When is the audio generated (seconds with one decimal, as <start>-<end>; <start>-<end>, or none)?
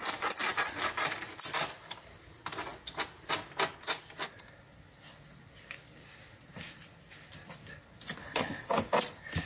8.2-8.7